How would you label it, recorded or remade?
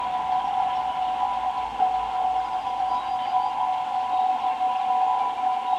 recorded